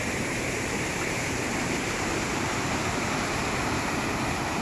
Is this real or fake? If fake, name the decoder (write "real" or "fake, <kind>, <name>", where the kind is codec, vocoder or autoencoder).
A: fake, vocoder, BigVGAN v2